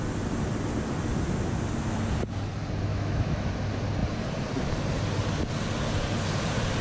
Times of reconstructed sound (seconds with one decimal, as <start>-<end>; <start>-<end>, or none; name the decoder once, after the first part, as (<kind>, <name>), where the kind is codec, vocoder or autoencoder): 2.9-3.5 (autoencoder, DAC-VAE)